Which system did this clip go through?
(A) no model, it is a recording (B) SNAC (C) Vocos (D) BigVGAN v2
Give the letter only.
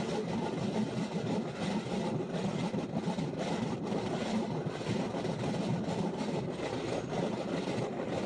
A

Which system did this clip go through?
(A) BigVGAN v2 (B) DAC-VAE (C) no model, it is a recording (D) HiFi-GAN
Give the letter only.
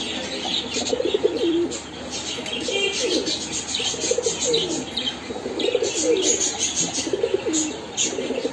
C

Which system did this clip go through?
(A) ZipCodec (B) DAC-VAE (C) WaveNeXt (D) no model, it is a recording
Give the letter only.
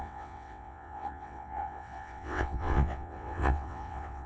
C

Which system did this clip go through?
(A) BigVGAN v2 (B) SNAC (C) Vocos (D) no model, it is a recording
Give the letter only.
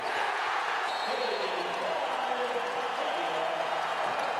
C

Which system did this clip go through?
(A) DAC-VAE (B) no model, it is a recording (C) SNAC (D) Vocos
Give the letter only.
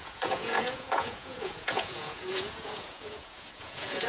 D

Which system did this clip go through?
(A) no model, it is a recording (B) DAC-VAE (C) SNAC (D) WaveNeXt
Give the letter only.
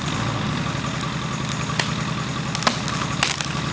A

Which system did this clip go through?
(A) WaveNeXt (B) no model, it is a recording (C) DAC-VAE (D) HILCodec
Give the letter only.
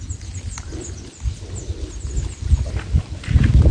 B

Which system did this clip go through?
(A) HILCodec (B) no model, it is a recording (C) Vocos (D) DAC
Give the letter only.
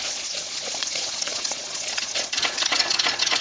C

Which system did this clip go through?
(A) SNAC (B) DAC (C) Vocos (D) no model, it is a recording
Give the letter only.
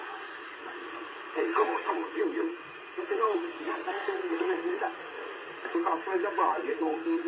C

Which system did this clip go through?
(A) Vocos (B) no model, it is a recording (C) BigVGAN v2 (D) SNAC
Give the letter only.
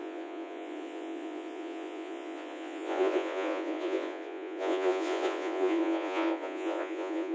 A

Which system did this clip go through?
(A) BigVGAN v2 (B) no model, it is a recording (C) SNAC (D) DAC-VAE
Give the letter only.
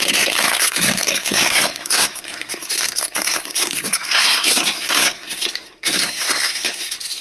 C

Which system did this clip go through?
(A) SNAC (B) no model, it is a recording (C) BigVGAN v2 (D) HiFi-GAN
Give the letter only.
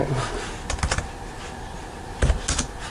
B